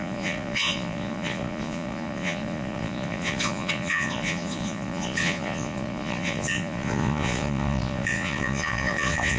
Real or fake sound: fake